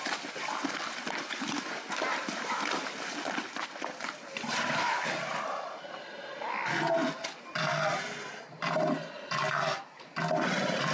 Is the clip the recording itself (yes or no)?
yes